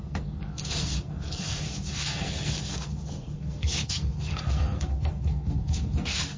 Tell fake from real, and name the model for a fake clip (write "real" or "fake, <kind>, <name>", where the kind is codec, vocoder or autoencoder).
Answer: fake, codec, SNAC